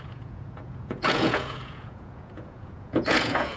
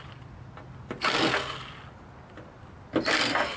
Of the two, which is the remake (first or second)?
first